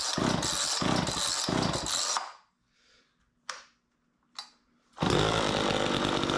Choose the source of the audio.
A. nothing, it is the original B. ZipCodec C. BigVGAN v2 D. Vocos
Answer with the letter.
A